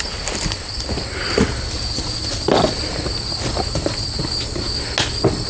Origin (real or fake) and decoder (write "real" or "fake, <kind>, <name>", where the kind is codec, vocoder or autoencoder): real